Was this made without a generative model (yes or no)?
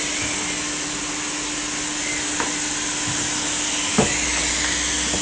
yes